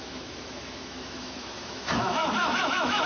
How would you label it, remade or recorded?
remade